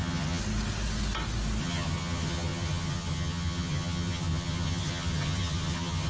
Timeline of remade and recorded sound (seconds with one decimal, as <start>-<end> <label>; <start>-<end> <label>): 0.0-0.4 remade; 0.4-1.6 recorded; 1.6-6.1 remade